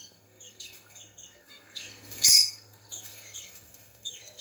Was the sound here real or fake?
fake